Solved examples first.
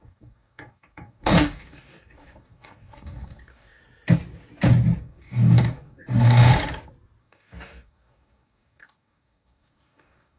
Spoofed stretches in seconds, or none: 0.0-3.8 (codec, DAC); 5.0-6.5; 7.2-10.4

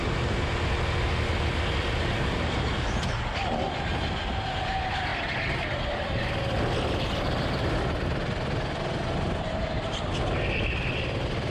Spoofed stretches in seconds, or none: none

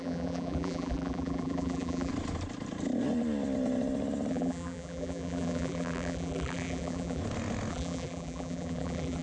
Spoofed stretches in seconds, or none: 0.0-2.1 (vocoder, BigVGAN v2); 4.3-7.2; 7.7-9.2

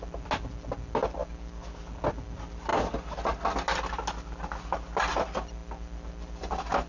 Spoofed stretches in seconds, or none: none